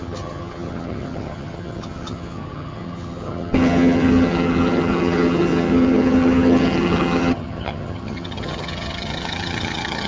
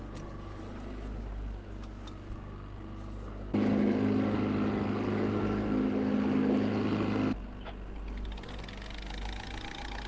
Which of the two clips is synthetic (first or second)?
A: first